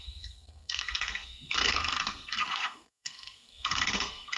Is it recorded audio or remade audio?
remade